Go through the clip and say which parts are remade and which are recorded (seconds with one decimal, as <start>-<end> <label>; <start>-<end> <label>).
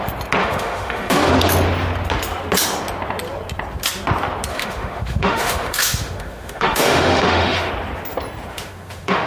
0.0-0.4 recorded; 0.4-1.3 remade; 1.3-4.5 recorded; 4.5-7.7 remade; 7.7-8.5 recorded; 8.5-9.3 remade